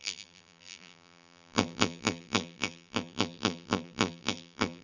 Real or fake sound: fake